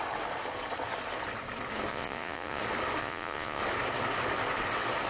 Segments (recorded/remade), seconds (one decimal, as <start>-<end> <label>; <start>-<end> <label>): 0.0-1.9 recorded; 1.9-2.6 remade; 2.6-3.0 recorded; 3.0-3.6 remade; 3.6-5.1 recorded